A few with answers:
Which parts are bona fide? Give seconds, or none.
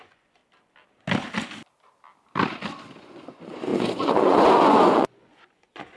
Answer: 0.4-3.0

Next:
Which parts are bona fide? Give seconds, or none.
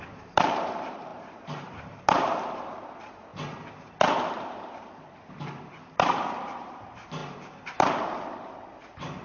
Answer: 3.3-4.3